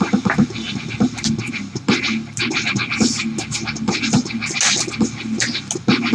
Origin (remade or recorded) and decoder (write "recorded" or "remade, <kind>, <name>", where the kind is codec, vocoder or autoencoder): recorded